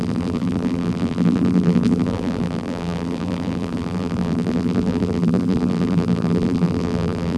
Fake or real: fake